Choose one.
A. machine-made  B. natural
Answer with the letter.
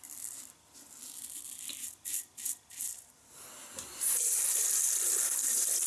A